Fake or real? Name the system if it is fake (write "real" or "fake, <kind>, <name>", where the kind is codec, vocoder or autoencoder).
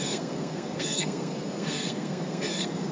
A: fake, codec, SNAC